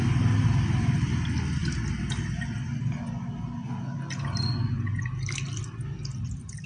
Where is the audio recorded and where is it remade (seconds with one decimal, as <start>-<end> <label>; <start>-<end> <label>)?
0.0-6.7 recorded